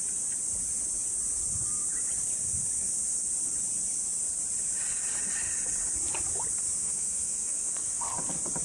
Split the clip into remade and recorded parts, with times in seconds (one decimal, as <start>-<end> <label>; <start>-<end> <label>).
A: 0.0-6.8 recorded; 6.8-8.0 remade; 8.0-8.6 recorded